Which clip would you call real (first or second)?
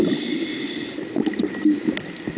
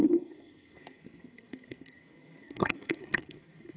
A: first